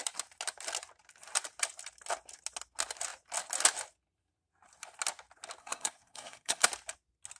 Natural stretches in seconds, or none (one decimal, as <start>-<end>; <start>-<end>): 0.0-5.6; 6.7-7.4